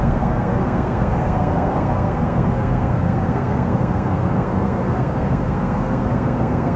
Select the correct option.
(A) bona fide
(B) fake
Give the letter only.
B